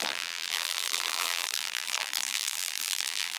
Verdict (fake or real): fake